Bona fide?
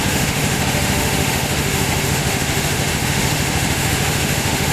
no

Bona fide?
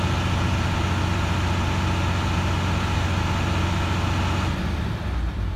yes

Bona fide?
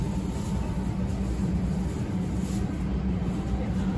yes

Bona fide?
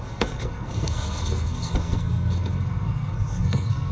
no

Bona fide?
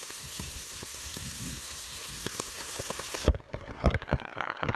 no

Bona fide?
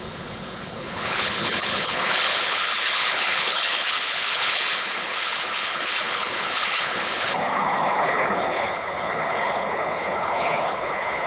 no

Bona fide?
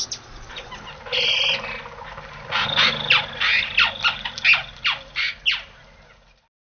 yes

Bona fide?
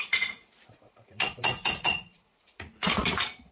no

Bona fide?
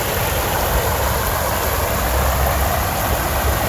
yes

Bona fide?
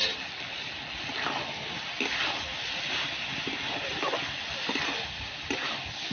yes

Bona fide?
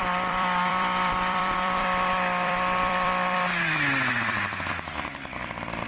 no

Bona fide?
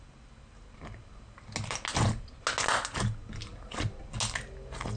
yes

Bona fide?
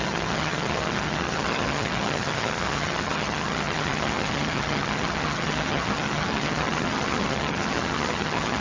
no